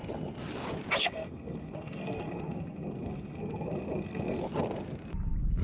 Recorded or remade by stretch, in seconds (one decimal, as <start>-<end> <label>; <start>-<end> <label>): 0.0-1.0 recorded; 1.0-4.4 remade; 4.4-5.6 recorded